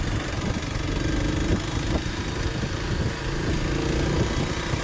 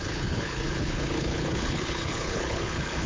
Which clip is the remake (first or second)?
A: second